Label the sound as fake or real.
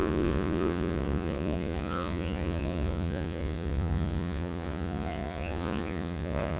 fake